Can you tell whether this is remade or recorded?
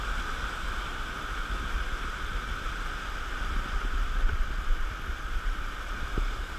remade